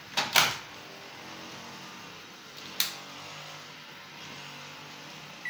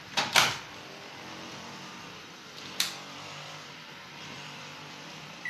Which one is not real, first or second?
second